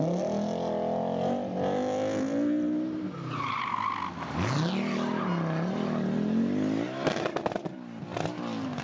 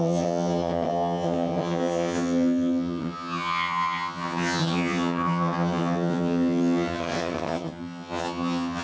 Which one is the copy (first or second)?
second